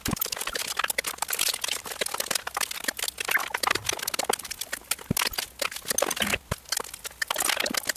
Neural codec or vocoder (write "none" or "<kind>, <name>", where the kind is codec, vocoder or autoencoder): none